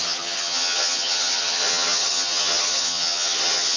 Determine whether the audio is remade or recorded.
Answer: remade